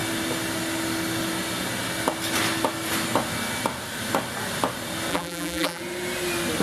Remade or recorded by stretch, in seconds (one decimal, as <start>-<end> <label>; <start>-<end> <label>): 0.0-5.1 recorded; 5.1-5.8 remade; 5.8-6.6 recorded